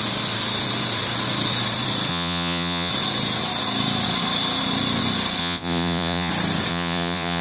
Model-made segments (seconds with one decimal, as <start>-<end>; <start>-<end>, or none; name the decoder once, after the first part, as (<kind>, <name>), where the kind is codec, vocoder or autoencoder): 2.1-2.9 (vocoder, Vocos); 5.4-6.3; 6.7-7.4